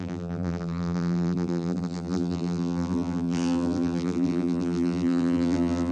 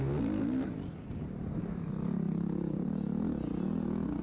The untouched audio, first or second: second